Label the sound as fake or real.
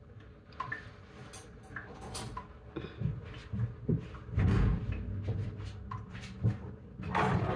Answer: real